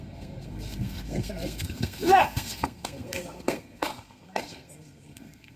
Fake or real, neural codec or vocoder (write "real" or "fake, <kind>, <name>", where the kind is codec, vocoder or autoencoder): fake, codec, SNAC